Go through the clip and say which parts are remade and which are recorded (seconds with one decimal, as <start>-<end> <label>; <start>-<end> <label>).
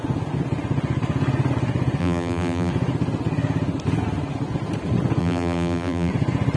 0.0-2.0 recorded; 2.0-2.7 remade; 2.7-5.2 recorded; 5.2-6.1 remade; 6.1-6.6 recorded